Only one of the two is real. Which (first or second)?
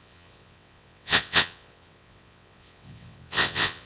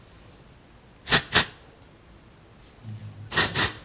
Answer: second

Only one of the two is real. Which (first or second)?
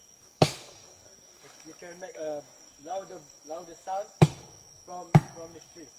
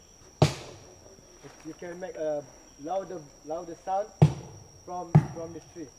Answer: second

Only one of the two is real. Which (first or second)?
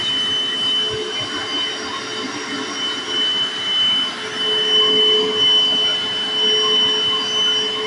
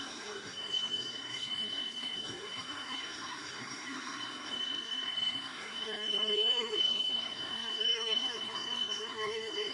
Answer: first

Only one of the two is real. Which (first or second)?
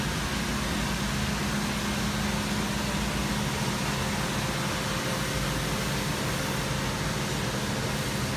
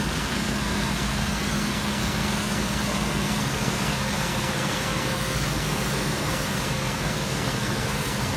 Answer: first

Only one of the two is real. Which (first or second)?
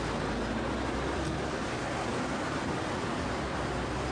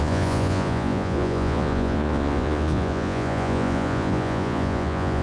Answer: first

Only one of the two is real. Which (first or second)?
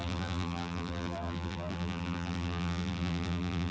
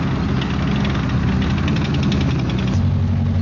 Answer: second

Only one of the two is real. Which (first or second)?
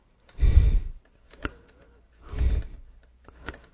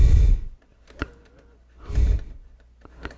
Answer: second